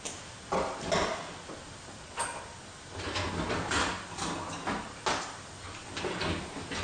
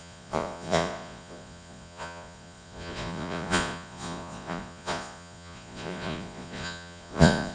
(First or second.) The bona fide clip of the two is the first